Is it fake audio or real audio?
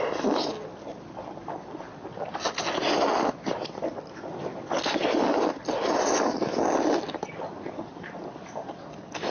real